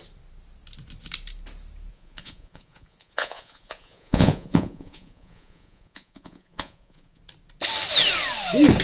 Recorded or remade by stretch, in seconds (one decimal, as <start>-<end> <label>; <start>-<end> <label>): 0.0-1.9 recorded; 1.9-7.2 remade; 7.2-8.8 recorded